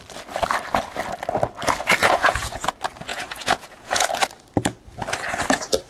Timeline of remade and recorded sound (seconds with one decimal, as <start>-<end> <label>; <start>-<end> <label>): 0.0-2.0 recorded; 2.0-2.7 remade; 2.7-3.1 recorded; 3.1-4.1 remade; 4.1-5.9 recorded